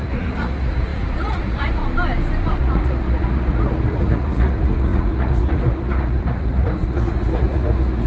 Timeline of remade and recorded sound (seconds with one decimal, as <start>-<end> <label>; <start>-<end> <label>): 0.0-1.8 remade; 1.8-2.6 recorded; 2.6-8.1 remade